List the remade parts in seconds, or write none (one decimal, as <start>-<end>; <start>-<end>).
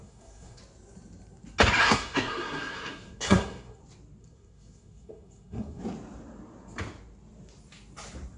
0.0-0.6; 1.8-3.8; 4.2-5.8